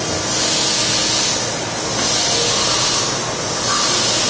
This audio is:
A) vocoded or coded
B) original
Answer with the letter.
B